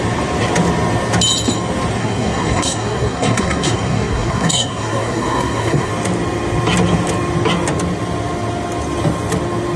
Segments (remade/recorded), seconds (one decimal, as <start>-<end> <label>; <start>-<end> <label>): 0.0-2.0 recorded; 2.0-5.9 remade; 5.9-9.8 recorded